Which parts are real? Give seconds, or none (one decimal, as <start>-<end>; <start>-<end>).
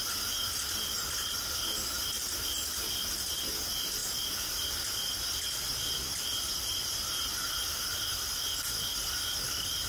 0.0-9.9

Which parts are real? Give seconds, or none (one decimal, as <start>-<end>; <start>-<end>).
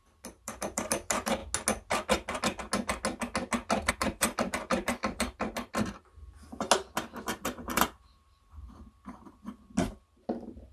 1.4-3.9; 5.7-7.4; 9.6-10.7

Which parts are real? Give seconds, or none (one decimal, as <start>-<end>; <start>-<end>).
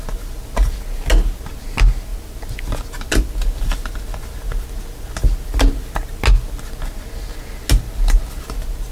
0.0-8.9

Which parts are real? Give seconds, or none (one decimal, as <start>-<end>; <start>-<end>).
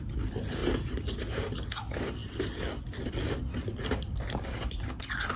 0.0-5.4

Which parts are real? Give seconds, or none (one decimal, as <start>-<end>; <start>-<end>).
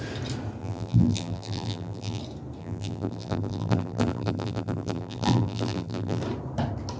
0.0-0.6; 2.2-2.6; 6.2-7.0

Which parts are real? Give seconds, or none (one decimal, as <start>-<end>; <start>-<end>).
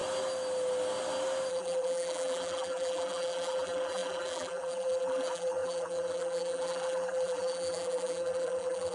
0.0-1.5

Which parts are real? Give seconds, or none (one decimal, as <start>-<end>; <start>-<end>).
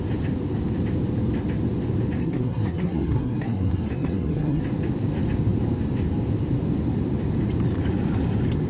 0.0-2.2; 4.6-8.7